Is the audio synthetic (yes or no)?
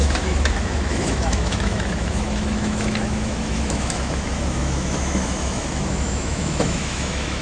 yes